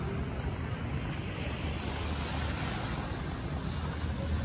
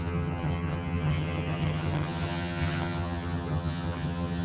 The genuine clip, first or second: first